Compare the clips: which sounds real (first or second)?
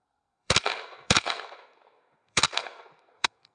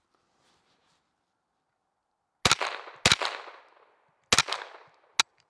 second